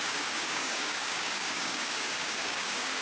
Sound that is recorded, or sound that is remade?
remade